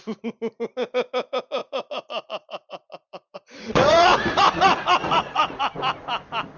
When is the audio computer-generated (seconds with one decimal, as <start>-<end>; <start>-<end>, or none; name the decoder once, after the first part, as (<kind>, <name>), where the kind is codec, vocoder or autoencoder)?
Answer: 1.6-5.6 (vocoder, Vocos)